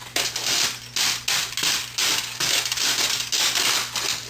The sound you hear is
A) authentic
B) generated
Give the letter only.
A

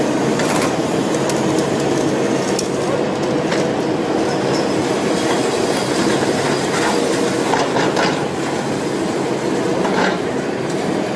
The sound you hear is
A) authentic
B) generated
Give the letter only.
A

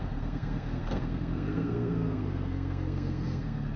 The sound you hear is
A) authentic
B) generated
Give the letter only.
B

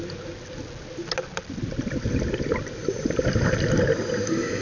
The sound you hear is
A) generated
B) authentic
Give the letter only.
B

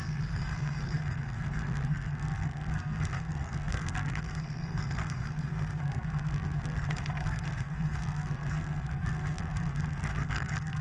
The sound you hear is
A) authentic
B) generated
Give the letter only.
B